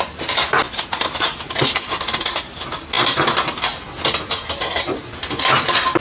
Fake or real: real